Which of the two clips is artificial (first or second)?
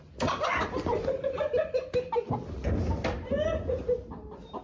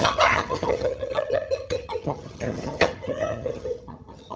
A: second